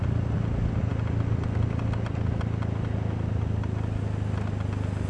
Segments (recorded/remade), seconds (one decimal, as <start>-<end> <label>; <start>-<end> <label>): 0.0-5.1 recorded